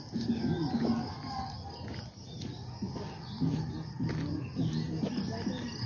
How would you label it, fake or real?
real